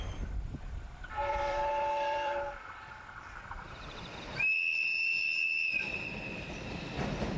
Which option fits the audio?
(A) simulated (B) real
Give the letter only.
A